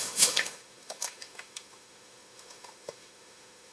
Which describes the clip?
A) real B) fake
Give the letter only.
B